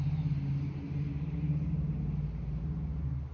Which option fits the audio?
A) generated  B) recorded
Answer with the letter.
B